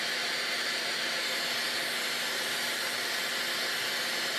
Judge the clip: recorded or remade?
recorded